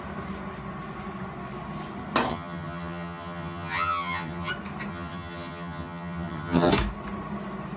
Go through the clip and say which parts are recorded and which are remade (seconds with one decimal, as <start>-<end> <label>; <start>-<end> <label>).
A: 0.0-2.3 recorded; 2.3-4.5 remade; 4.5-4.9 recorded; 4.9-6.7 remade; 6.7-7.8 recorded